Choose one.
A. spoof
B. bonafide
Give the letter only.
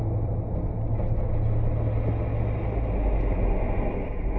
B